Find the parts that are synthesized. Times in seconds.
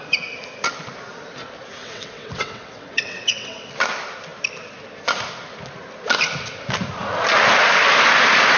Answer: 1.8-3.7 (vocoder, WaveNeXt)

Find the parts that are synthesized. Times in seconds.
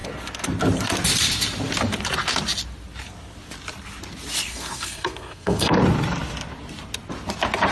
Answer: 4.5-5.8 (codec, SNAC)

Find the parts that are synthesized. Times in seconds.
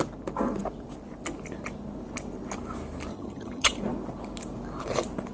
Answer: 3.1-3.7 (vocoder, HiFi-GAN)